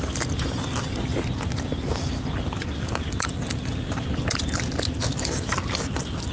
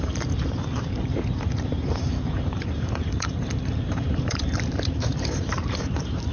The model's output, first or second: second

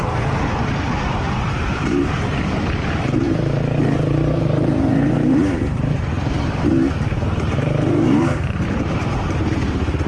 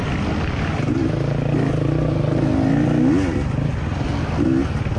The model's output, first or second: first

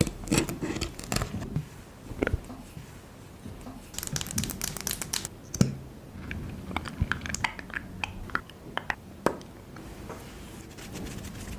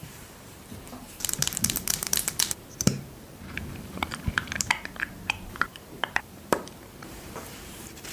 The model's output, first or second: second